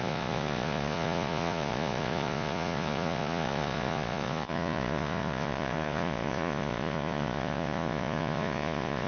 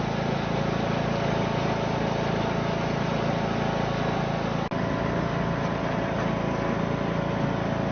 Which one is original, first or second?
second